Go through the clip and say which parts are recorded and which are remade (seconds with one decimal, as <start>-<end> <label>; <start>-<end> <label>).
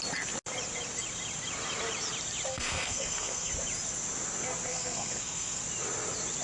0.0-2.5 recorded; 2.5-3.5 remade; 3.5-4.7 recorded; 4.7-5.6 remade; 5.6-6.4 recorded